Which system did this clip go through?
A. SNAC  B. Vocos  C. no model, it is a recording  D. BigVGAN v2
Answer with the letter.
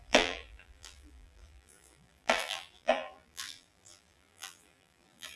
D